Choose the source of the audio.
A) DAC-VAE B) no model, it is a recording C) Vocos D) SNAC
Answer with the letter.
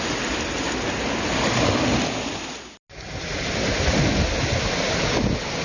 B